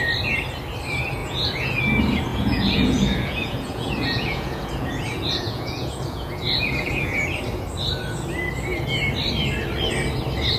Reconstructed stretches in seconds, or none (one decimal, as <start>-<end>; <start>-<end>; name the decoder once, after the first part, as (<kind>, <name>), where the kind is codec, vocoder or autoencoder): 1.2-1.8 (vocoder, Vocos); 2.3-7.3